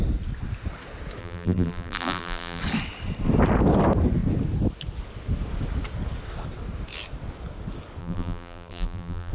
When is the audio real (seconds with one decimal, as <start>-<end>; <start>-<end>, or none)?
0.0-1.2; 2.6-8.0